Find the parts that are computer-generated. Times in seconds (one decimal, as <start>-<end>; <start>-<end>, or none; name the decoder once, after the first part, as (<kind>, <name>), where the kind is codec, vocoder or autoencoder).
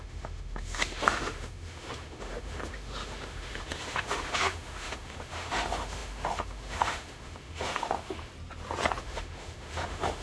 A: 0.0-8.3 (autoencoder, DAC-VAE); 9.0-10.2